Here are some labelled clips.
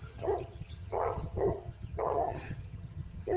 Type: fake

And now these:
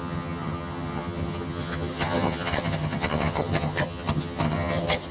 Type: fake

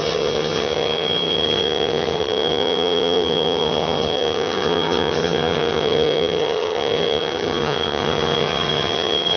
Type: fake